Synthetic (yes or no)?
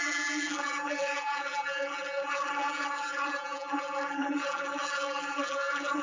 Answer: yes